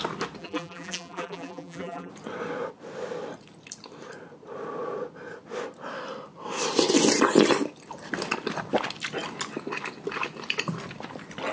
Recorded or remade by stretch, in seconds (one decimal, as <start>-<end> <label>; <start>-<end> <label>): 0.0-0.4 recorded; 0.4-2.1 remade; 2.1-11.5 recorded